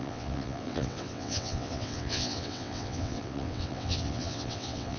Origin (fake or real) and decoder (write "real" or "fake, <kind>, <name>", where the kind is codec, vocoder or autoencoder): fake, vocoder, WaveNeXt